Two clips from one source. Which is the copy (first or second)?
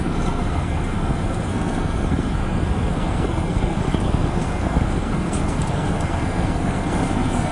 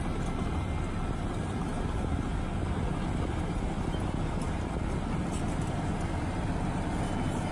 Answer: first